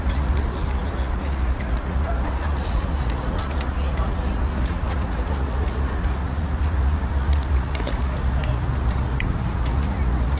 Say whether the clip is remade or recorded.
remade